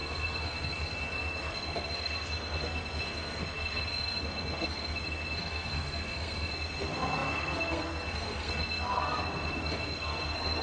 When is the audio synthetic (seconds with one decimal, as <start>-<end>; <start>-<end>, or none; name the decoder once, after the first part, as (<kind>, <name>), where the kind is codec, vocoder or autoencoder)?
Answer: 0.0-10.6 (codec, SNAC)